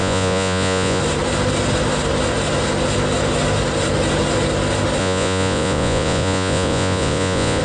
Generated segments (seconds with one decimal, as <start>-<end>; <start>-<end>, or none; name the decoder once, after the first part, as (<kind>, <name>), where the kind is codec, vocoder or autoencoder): 0.0-1.0 (vocoder, Vocos); 5.0-7.6